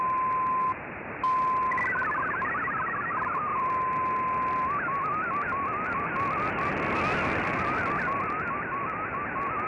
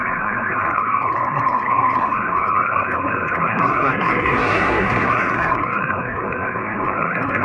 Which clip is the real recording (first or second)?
first